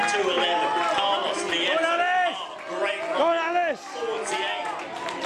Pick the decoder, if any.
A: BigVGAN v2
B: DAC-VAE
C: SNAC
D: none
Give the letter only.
D